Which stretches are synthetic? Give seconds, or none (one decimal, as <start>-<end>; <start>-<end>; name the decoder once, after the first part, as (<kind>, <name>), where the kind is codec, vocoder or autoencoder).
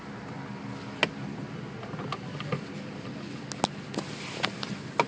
none